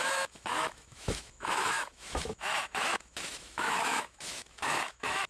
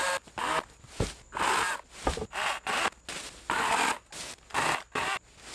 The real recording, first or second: second